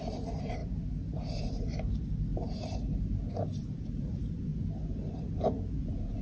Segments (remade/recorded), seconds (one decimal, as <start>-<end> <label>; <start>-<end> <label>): 0.0-4.5 remade; 4.5-6.2 recorded